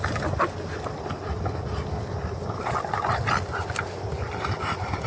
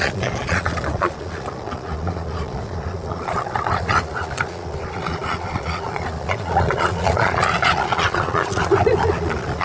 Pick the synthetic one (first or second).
second